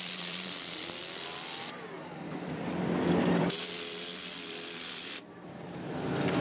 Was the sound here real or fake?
fake